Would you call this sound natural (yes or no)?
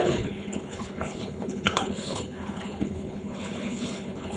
no